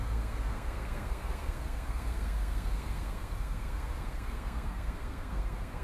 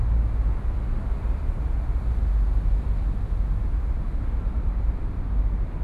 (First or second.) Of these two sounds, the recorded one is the second